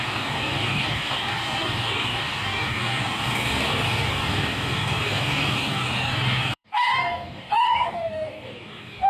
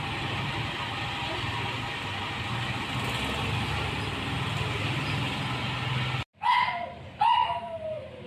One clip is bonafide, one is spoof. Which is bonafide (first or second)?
second